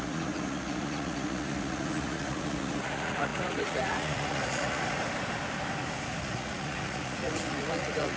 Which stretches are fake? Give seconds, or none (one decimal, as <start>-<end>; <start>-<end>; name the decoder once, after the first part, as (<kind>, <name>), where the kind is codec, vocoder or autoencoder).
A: 0.0-5.0 (vocoder, Vocos); 6.2-8.2